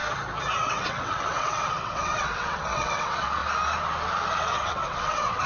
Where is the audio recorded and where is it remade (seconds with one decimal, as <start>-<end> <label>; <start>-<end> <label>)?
0.0-0.6 recorded; 0.6-3.4 remade; 3.4-4.4 recorded; 4.4-5.5 remade